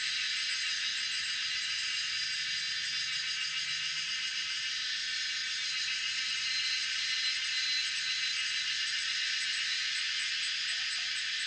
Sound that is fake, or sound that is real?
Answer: real